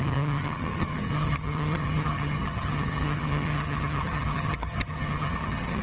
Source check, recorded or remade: remade